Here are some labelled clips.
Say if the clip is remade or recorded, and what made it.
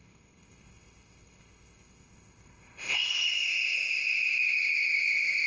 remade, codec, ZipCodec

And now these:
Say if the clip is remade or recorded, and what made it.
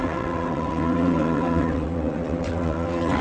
remade, vocoder, WaveNeXt